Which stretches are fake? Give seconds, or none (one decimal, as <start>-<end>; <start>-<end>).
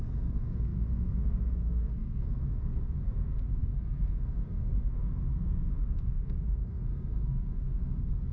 0.0-8.3